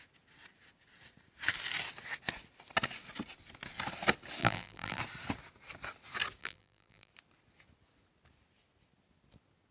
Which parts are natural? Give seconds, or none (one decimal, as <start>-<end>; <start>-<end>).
0.0-4.4; 5.0-6.4; 7.1-9.7